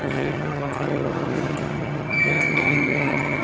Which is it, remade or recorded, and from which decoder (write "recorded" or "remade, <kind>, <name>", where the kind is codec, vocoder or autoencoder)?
remade, vocoder, HiFi-GAN